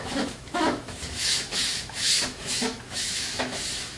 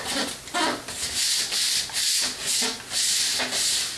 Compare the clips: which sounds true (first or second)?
second